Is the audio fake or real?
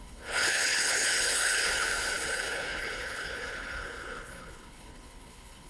fake